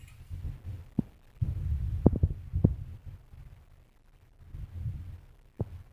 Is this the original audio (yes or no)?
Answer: yes